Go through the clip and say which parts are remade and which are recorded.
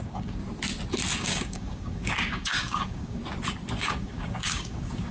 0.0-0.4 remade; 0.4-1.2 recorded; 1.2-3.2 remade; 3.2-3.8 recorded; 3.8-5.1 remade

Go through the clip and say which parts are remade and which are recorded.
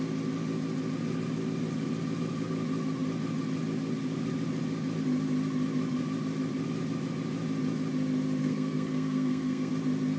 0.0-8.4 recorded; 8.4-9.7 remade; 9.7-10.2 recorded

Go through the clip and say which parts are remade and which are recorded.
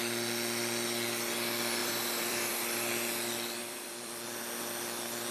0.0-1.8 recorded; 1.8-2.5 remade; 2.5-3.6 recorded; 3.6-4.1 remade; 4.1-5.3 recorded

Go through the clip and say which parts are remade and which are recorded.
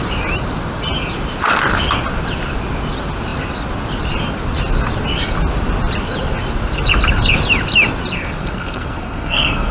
0.0-8.4 recorded; 8.4-9.7 remade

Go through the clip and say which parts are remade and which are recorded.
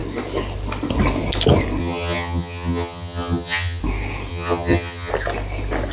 0.0-1.8 recorded; 1.8-3.8 remade; 3.8-4.3 recorded; 4.3-5.1 remade; 5.1-5.9 recorded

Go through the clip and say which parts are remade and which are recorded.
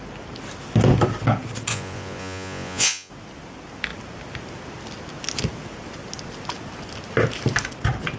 0.0-1.7 recorded; 1.7-3.1 remade; 3.1-8.2 recorded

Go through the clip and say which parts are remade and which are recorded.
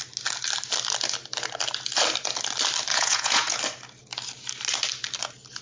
0.0-2.9 recorded; 2.9-3.6 remade; 3.6-5.6 recorded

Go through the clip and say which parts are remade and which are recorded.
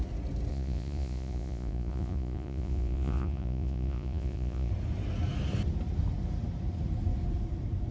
0.0-0.5 recorded; 0.5-4.7 remade; 4.7-7.9 recorded